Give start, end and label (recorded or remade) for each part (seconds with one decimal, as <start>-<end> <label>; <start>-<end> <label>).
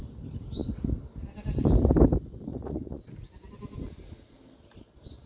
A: 0.0-2.5 recorded; 2.5-3.3 remade; 3.3-5.3 recorded